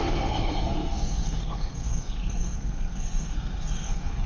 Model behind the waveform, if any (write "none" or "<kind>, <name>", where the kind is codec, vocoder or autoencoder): codec, SNAC